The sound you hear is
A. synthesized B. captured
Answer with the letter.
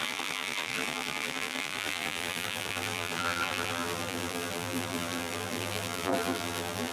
A